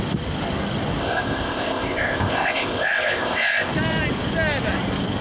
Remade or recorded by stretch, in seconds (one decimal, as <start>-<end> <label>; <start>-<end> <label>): 0.0-1.0 recorded; 1.0-3.7 remade; 3.7-5.2 recorded